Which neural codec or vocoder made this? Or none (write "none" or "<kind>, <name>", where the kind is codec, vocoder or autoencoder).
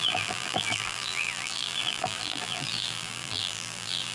vocoder, BigVGAN v2